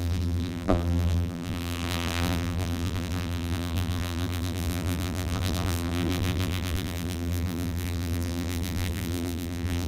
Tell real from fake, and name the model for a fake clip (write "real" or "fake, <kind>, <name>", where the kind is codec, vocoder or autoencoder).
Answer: fake, vocoder, BigVGAN v2